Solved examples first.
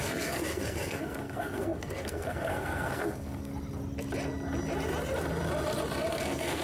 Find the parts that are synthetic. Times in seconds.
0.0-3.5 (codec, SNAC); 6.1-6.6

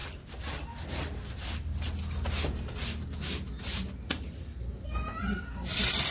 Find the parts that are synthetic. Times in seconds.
none

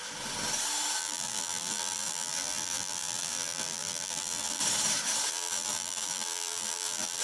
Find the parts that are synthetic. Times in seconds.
1.0-4.6 (vocoder, BigVGAN v2); 5.3-7.2

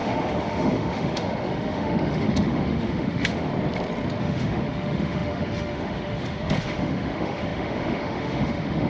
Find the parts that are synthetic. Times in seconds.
0.0-3.5 (autoencoder, DAC-VAE); 4.2-8.9

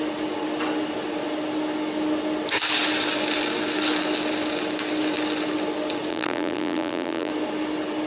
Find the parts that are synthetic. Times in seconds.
6.1-7.3 (vocoder, BigVGAN v2)

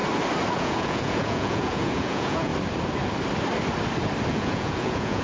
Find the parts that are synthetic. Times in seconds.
0.5-2.5 (vocoder, Vocos); 4.3-5.2

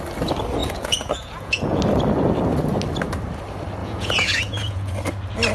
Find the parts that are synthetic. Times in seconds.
0.6-1.8 (vocoder, Vocos); 3.8-4.9

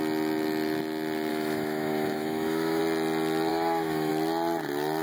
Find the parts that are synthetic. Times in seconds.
1.3-2.8 (autoencoder, DAC-VAE); 3.5-4.1